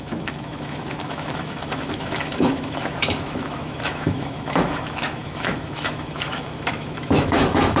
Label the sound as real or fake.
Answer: fake